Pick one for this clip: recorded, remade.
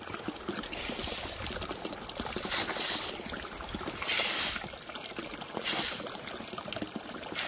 recorded